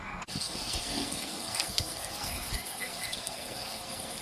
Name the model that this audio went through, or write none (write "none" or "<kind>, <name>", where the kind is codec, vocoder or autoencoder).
codec, SNAC